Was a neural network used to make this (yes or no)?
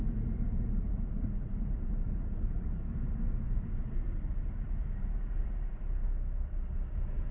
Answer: yes